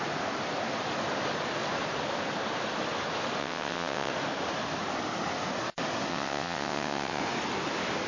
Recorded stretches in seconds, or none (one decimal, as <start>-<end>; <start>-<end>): 0.0-3.4; 4.1-6.1; 7.2-8.1